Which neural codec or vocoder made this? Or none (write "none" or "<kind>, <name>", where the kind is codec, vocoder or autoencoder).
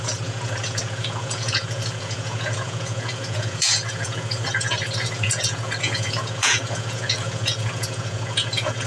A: vocoder, Vocos